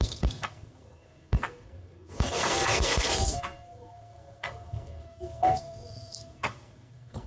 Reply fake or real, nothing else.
fake